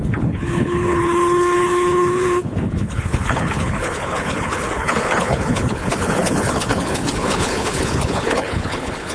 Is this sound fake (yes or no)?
yes